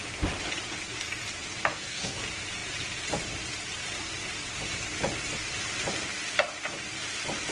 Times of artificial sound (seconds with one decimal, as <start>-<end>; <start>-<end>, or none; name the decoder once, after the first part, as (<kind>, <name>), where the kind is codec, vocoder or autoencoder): 1.7-2.2 (codec, SNAC)